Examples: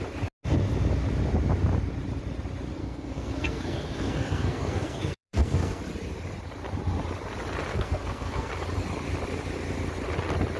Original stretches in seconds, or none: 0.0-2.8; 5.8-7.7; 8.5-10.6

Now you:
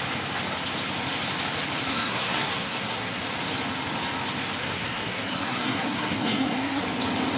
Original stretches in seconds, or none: 0.0-1.9; 3.2-4.6; 6.8-7.4

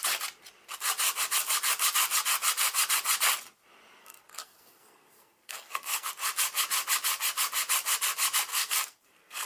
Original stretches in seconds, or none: 0.0-4.0; 6.1-8.5

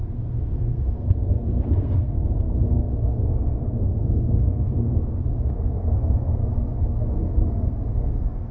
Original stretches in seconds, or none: 6.4-7.1